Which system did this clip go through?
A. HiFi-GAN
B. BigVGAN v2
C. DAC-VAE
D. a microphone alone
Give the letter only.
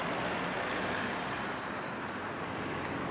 D